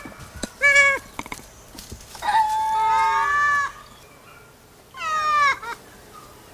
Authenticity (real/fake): real